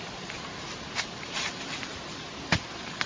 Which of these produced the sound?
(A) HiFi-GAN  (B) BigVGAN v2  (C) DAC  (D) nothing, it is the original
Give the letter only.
D